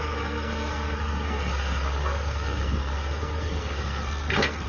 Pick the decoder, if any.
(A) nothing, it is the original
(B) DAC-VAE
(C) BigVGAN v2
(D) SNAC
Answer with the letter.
D